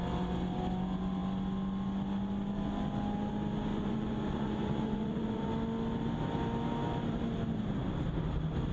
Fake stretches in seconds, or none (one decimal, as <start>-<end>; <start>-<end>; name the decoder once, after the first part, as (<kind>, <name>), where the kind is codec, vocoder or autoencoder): 3.7-5.5 (vocoder, Vocos)